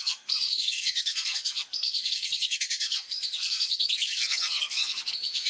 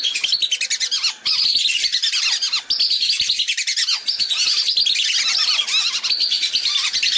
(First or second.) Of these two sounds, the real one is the second